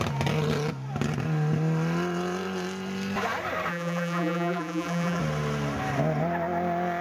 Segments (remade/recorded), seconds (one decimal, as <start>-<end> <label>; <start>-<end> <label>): 0.0-3.7 recorded; 3.7-5.2 remade; 5.2-7.0 recorded